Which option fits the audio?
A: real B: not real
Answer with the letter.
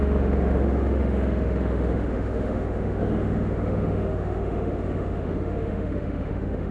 B